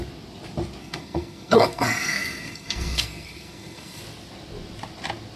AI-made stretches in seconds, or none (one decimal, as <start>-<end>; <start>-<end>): 0.8-4.0